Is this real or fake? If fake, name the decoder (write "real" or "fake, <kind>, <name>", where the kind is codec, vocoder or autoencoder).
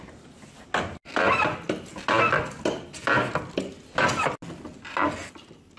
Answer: real